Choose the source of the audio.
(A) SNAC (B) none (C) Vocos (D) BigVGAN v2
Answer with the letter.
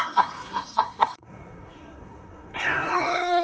A